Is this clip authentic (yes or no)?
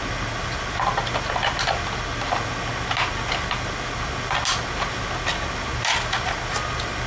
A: yes